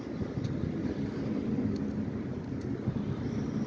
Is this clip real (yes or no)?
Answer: yes